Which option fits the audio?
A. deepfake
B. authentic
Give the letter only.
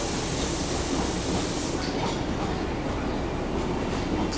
B